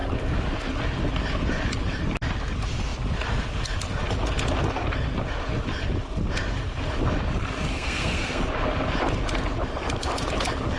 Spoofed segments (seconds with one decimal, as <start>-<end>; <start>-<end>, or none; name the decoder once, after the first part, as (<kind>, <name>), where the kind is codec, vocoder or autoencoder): 7.7-8.4 (codec, SNAC)